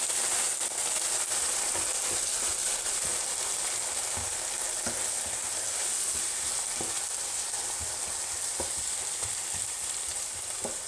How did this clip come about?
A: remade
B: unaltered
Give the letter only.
B